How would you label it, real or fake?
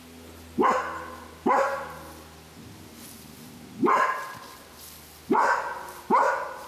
real